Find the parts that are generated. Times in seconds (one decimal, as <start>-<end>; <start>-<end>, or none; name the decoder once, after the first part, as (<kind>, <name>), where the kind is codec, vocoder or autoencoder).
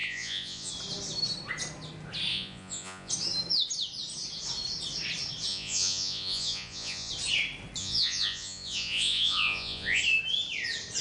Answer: 0.0-0.7 (vocoder, Vocos); 2.3-3.1; 5.5-7.1; 7.8-10.0